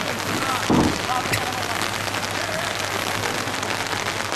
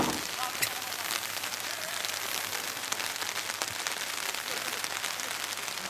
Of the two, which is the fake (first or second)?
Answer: second